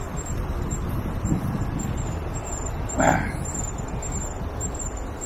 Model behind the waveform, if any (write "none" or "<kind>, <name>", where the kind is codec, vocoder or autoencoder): none